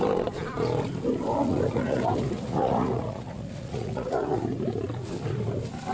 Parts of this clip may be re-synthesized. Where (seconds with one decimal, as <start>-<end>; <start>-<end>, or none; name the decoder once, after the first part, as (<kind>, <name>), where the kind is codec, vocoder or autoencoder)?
1.4-4.4 (vocoder, Vocos)